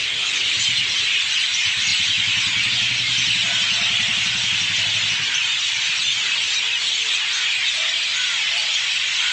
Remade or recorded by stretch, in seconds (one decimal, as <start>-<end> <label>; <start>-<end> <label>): 0.0-9.3 recorded